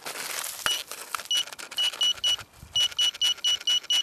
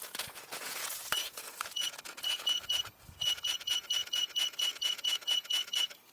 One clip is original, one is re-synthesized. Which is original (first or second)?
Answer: first